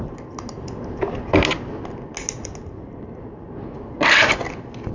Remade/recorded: recorded